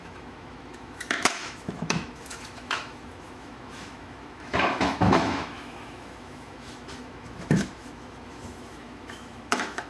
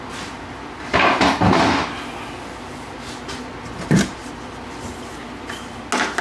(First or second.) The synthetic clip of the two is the first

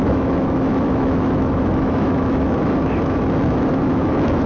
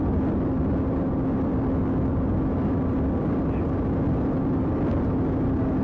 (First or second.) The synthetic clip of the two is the first